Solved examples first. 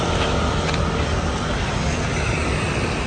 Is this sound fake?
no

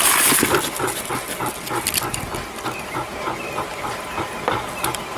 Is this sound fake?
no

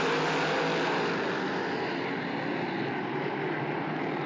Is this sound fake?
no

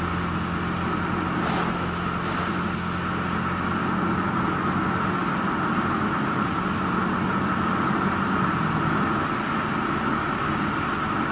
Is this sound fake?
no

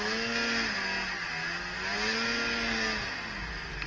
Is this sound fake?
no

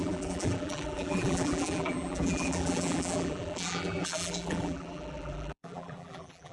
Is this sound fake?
yes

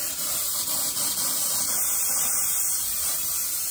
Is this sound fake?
yes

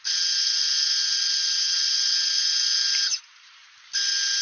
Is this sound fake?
no